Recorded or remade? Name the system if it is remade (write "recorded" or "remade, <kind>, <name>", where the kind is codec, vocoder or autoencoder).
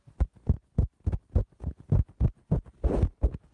recorded